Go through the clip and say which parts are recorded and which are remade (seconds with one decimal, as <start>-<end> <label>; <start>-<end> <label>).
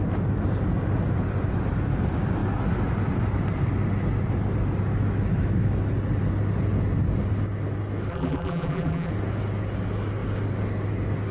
0.0-8.1 recorded; 8.1-9.1 remade; 9.1-11.3 recorded